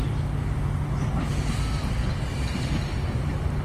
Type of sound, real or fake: real